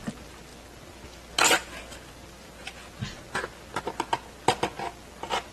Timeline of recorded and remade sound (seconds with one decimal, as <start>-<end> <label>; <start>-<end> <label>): 0.0-5.5 recorded